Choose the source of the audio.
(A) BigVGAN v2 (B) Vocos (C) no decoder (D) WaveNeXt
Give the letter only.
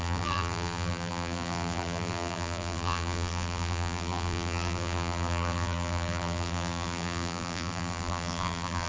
A